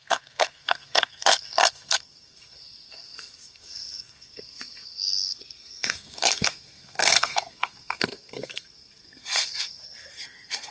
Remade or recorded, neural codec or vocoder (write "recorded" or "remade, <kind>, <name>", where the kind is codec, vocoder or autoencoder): remade, codec, SNAC